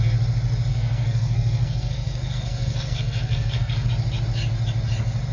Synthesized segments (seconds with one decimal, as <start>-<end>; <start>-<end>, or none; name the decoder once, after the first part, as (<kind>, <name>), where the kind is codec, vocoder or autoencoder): 0.7-3.9 (codec, SNAC)